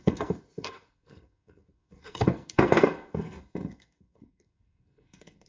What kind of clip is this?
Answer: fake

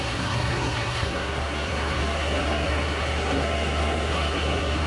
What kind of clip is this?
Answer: fake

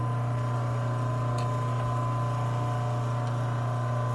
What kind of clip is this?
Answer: real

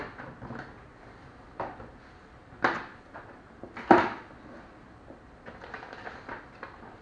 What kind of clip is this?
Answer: real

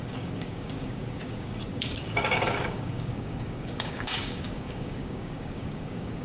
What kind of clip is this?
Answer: fake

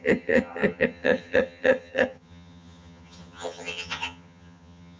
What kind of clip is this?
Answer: fake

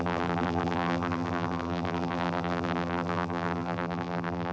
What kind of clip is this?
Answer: fake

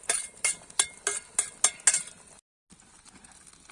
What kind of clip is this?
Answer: real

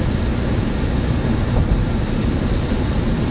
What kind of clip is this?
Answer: real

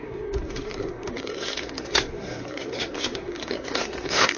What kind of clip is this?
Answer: fake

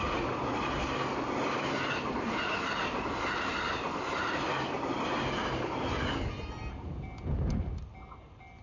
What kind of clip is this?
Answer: real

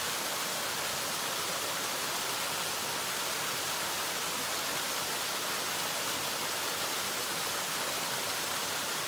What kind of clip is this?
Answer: real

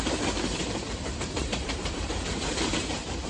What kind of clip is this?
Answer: fake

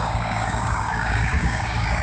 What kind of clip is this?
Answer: fake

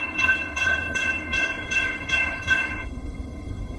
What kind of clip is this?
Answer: fake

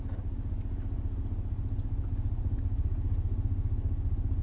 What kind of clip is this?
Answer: real